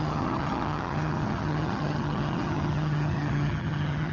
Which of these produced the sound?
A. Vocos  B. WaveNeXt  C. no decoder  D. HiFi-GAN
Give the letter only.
D